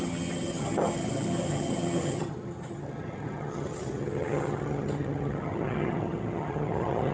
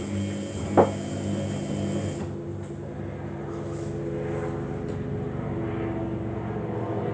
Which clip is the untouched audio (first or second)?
second